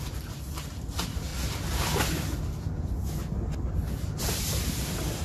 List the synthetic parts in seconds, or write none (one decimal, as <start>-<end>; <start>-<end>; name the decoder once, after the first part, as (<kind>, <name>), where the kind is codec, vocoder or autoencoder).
0.0-1.3 (vocoder, BigVGAN v2); 4.2-5.2